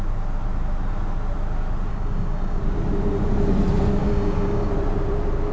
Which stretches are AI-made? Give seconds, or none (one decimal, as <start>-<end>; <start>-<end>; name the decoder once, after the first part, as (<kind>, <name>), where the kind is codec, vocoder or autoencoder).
1.9-2.6 (codec, DAC); 4.0-4.7